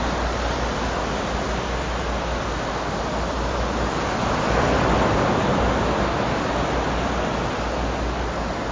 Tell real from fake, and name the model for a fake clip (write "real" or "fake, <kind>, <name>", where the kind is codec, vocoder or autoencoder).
real